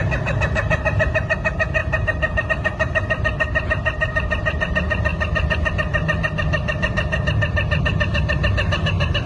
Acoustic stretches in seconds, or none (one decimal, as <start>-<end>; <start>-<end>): 0.0-1.8; 2.5-9.3